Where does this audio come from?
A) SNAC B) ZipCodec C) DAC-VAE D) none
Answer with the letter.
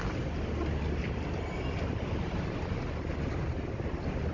D